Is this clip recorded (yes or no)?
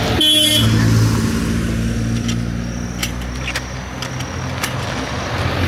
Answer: yes